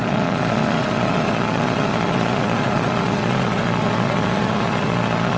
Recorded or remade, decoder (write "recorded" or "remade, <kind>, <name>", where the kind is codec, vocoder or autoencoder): remade, vocoder, Vocos